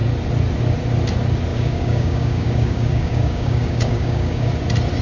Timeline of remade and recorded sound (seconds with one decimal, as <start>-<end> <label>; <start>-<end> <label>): 0.0-1.5 recorded; 1.5-4.5 remade; 4.5-5.0 recorded